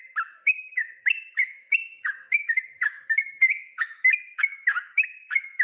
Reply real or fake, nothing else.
fake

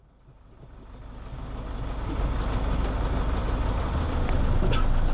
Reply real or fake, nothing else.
real